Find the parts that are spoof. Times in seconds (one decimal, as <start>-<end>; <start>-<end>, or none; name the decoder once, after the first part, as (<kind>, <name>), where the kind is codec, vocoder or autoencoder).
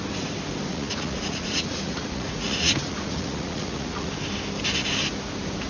0.7-4.1 (vocoder, Vocos)